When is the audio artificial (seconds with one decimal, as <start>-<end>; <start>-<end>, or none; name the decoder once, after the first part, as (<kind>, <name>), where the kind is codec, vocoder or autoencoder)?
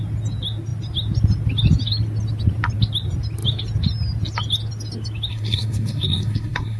5.3-6.8 (codec, SNAC)